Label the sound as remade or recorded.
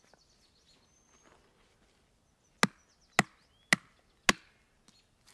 recorded